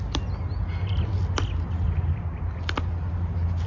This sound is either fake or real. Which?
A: real